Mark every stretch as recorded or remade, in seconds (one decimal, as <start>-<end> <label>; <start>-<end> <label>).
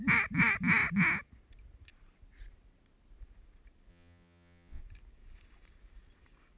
0.0-3.9 recorded; 3.9-4.8 remade; 4.8-6.6 recorded